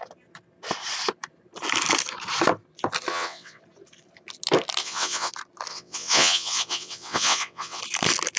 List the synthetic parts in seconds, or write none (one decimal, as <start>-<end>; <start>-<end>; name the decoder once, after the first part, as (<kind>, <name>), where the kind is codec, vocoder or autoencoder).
3.1-3.6 (vocoder, WaveNeXt); 4.8-5.3; 5.7-7.8